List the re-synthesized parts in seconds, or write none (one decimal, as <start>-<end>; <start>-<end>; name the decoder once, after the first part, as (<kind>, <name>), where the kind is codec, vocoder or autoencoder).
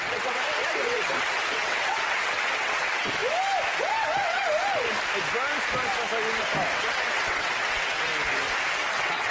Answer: 0.0-3.2 (vocoder, WaveNeXt); 3.8-4.4; 6.7-8.1; 8.7-9.3